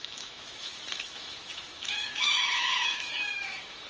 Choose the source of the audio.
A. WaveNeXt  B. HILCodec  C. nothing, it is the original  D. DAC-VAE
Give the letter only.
D